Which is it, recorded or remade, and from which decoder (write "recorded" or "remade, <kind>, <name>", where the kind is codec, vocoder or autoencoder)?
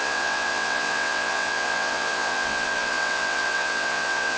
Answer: remade, vocoder, WaveNeXt